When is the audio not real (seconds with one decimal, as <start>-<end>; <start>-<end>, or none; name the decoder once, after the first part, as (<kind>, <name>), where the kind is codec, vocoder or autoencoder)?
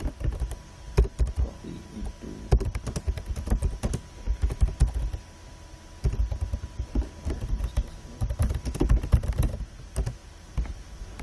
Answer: none